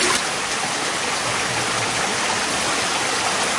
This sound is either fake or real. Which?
real